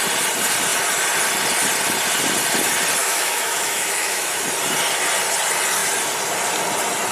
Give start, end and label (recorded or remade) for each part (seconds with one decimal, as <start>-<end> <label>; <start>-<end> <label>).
0.0-3.0 recorded; 3.0-4.4 remade; 4.4-7.1 recorded